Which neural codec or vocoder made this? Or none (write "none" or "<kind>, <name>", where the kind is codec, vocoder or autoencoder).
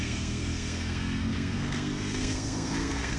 codec, SNAC